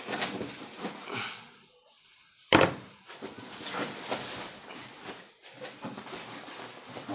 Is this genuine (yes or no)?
no